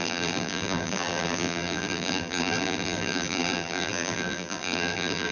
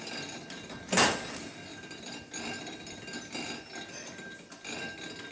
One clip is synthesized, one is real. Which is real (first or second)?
second